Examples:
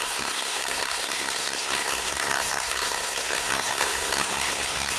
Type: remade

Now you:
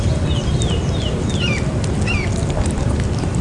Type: recorded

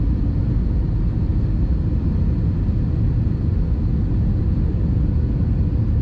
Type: recorded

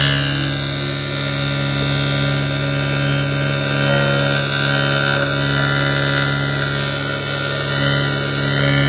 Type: recorded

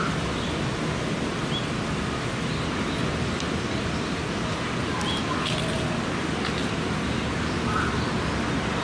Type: recorded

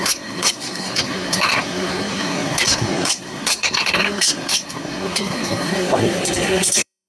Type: remade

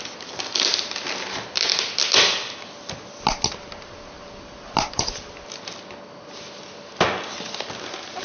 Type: recorded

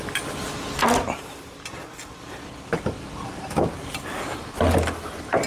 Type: recorded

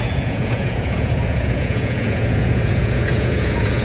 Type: remade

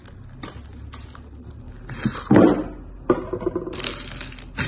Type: recorded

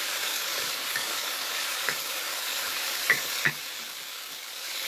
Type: remade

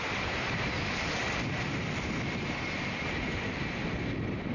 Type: recorded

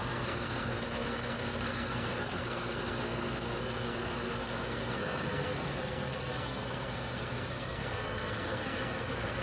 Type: remade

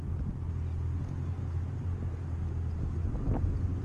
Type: recorded